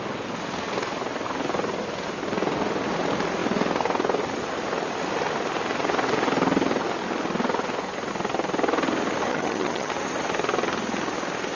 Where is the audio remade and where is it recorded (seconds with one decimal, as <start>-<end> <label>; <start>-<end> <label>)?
0.0-9.3 recorded; 9.3-9.9 remade; 9.9-11.6 recorded